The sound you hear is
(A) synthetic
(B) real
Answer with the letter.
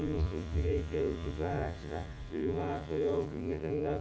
A